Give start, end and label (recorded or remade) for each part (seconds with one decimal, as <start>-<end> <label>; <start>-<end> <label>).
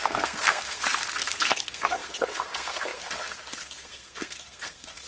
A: 0.0-5.1 remade